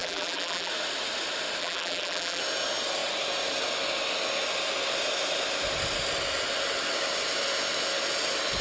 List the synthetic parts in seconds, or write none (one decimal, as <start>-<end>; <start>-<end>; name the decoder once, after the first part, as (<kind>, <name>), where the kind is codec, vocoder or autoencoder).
0.0-0.7 (vocoder, BigVGAN v2); 1.6-2.4